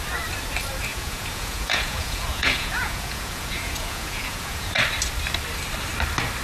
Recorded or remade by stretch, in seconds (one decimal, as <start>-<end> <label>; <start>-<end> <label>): 0.0-0.9 recorded; 0.9-4.7 remade; 4.7-6.4 recorded